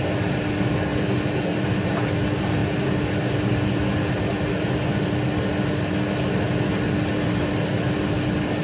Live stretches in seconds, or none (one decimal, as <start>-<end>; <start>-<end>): 0.0-8.6